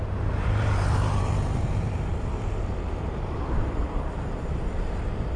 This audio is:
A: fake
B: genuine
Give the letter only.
A